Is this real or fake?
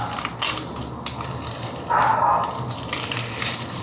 real